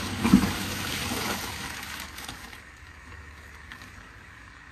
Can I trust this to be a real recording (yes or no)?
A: no